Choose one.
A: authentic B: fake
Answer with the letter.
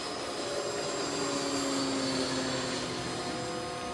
A